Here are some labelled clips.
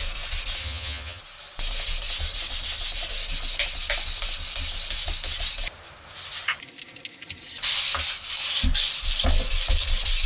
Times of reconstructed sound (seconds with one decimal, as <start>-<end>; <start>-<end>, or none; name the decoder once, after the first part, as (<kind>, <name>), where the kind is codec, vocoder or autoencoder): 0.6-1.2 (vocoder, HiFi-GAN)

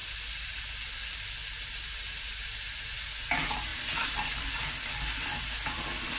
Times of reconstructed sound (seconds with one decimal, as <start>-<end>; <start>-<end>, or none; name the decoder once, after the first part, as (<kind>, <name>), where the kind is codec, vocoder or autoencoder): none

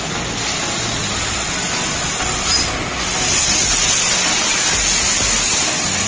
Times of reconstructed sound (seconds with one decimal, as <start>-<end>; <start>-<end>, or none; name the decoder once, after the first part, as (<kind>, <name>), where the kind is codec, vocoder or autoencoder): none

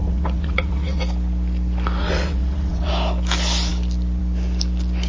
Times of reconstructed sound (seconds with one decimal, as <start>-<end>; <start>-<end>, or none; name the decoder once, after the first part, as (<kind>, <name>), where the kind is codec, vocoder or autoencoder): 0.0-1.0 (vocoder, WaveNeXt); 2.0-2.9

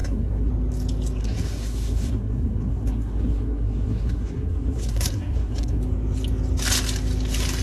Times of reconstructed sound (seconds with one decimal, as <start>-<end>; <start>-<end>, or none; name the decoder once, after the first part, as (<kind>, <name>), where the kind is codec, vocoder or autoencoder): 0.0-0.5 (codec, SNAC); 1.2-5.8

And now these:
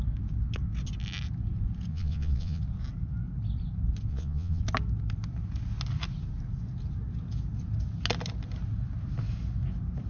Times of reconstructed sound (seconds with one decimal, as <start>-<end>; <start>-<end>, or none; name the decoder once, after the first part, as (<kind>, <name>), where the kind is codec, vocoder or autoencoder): 1.9-2.6 (vocoder, Vocos); 4.1-4.6